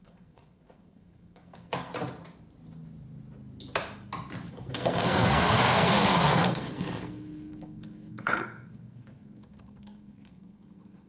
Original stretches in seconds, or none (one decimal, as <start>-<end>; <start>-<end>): 1.9-4.5